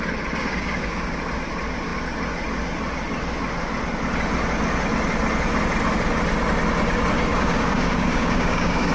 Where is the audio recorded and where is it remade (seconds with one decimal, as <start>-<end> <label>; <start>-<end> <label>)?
0.0-0.4 recorded; 0.4-1.2 remade; 1.2-7.3 recorded; 7.3-8.9 remade